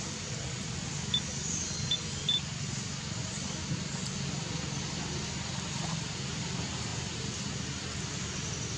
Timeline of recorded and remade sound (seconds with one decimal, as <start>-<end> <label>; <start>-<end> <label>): 0.0-8.8 recorded